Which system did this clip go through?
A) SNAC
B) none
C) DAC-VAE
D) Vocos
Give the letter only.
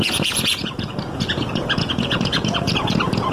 D